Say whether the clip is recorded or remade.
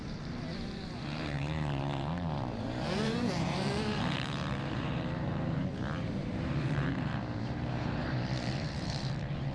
remade